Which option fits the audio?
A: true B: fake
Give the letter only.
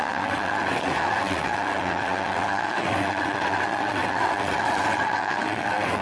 B